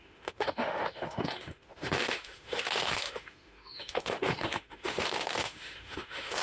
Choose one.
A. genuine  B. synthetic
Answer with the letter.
B